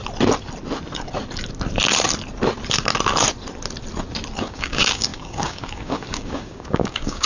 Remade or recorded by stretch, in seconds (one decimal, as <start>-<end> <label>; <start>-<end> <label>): 0.0-4.4 recorded; 4.4-7.3 remade